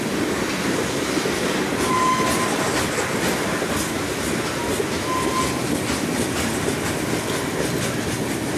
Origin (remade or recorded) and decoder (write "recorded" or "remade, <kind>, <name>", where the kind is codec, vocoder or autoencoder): recorded